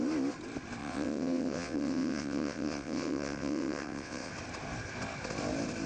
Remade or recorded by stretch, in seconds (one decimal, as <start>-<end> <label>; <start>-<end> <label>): 0.0-0.8 recorded; 0.8-4.3 remade; 4.3-5.9 recorded